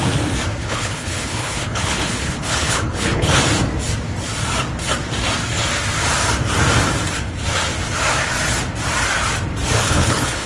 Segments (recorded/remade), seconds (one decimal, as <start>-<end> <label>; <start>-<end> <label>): 0.0-0.6 recorded; 0.6-3.4 remade; 3.4-9.8 recorded; 9.8-10.5 remade